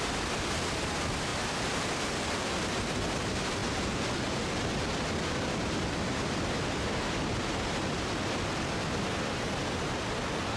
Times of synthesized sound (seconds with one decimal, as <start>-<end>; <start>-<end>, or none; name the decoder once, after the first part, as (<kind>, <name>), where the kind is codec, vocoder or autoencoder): 1.3-3.2 (vocoder, BigVGAN v2)